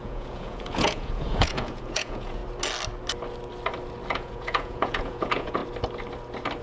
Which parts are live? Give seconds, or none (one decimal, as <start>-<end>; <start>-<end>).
2.4-4.1; 5.6-6.6

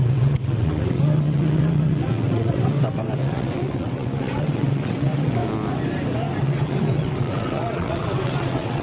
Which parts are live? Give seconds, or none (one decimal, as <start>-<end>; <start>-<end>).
5.4-6.4

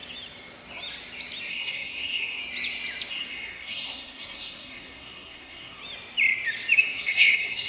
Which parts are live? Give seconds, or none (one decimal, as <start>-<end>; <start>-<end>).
0.0-1.5; 2.4-3.1; 5.8-6.8

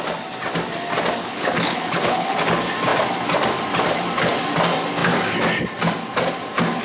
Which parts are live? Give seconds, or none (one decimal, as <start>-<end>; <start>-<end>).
0.0-1.2; 2.4-6.8

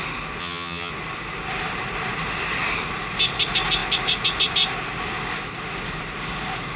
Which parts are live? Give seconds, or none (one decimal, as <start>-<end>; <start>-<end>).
0.0-0.4; 0.9-6.8

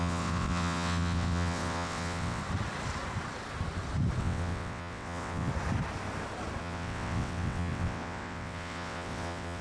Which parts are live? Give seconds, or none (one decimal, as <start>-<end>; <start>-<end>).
2.4-4.2; 5.5-6.6

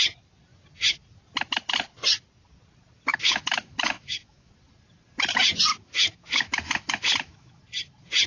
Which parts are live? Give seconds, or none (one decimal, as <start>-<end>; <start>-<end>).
0.0-3.1; 4.5-5.7; 7.6-8.3